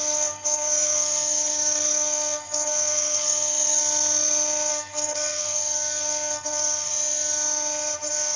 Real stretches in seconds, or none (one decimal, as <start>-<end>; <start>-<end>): 3.8-4.7; 6.9-8.4